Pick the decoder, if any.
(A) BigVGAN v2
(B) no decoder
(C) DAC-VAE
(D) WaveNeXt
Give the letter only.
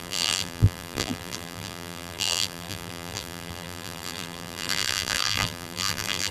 A